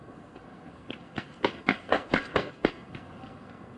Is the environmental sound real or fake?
fake